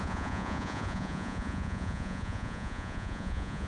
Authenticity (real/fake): fake